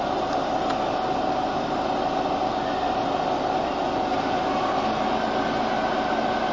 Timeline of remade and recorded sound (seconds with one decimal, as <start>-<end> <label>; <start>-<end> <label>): 0.0-6.5 recorded